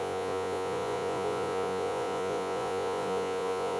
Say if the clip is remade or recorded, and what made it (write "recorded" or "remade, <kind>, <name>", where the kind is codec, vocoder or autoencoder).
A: remade, vocoder, Vocos